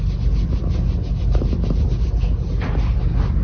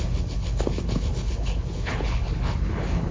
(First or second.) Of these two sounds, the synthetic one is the second